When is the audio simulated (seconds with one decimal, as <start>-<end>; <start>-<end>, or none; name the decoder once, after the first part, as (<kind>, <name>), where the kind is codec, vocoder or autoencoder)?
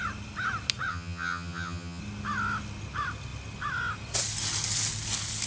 0.9-2.0 (vocoder, HiFi-GAN)